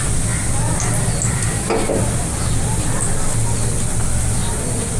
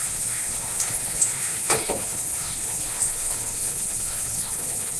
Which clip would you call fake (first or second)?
second